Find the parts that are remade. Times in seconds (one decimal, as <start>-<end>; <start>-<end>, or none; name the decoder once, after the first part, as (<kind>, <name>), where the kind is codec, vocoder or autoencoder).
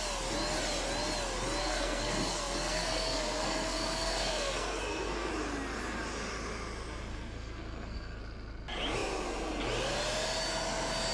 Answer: 1.6-5.3 (codec, SNAC); 7.1-8.2